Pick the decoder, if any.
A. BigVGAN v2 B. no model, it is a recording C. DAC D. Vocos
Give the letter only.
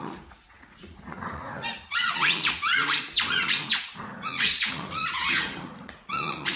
D